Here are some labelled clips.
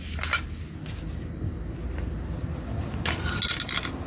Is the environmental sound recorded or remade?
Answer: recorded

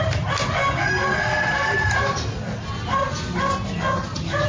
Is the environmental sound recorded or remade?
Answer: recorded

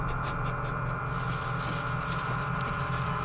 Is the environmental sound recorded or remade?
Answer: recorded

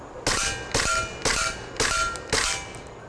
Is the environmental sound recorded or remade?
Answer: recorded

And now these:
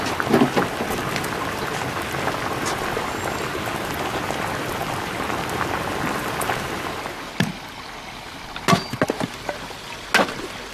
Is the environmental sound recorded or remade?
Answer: recorded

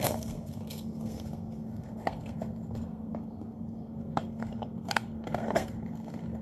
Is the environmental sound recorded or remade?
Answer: remade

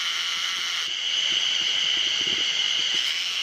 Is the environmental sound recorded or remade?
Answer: recorded